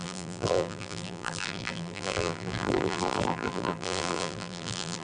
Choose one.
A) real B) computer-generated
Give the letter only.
B